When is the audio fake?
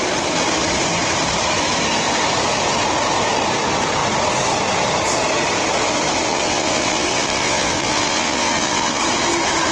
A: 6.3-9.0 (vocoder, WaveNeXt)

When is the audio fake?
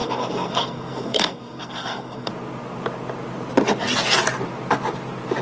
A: 0.0-2.3 (codec, SNAC)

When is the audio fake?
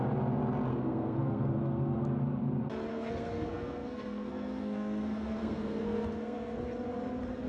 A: 0.7-2.0 (codec, SNAC); 2.9-6.6